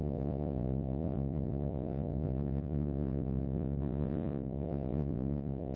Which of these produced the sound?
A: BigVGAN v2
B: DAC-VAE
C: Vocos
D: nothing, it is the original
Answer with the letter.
C